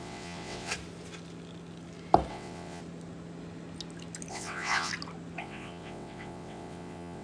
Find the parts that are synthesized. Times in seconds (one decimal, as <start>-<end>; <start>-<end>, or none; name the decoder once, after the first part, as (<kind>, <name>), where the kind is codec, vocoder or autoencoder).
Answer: 0.0-0.7 (vocoder, WaveNeXt); 2.3-2.8; 4.3-4.9; 5.4-7.2

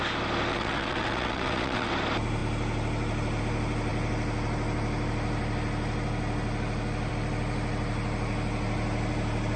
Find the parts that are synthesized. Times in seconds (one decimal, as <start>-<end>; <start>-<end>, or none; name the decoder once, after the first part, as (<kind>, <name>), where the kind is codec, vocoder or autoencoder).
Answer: 0.5-1.9 (vocoder, WaveNeXt)

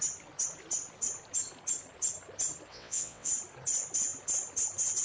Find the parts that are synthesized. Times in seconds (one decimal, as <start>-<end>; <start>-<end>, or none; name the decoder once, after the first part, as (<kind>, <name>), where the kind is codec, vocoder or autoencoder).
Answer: 2.7-3.3 (vocoder, WaveNeXt)

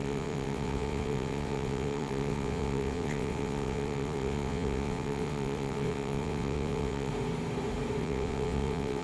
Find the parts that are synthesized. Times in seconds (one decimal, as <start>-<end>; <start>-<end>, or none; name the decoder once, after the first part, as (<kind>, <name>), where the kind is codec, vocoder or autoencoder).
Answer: 0.0-7.1 (vocoder, WaveNeXt); 8.0-9.0